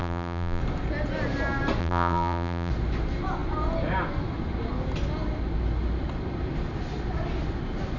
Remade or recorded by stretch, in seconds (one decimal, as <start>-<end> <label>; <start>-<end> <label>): 0.0-0.6 remade; 0.6-1.8 recorded; 1.8-2.7 remade; 2.7-8.0 recorded